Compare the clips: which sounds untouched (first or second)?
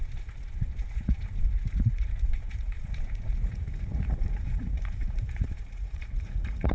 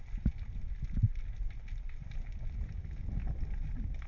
second